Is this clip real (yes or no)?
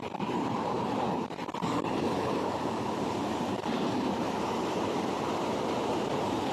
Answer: no